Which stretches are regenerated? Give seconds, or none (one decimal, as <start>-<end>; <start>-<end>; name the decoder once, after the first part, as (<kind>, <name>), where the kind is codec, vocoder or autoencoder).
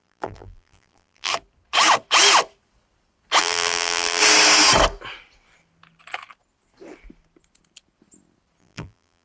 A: 0.0-1.3 (vocoder, BigVGAN v2); 3.4-4.2; 8.6-9.2